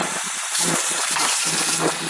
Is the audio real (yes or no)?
no